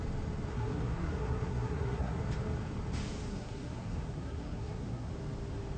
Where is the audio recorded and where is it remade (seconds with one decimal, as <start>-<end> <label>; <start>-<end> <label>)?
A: 0.0-0.5 recorded; 0.5-2.2 remade; 2.2-3.3 recorded; 3.3-5.1 remade; 5.1-5.8 recorded